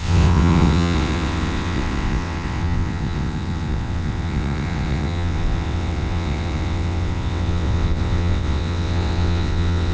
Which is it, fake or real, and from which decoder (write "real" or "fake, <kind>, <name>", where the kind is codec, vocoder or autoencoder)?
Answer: fake, vocoder, WaveNeXt